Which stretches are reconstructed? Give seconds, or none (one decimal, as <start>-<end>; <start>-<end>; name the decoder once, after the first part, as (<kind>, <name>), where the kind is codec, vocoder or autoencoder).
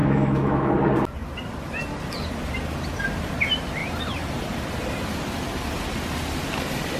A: 0.0-0.7 (autoencoder, DAC-VAE)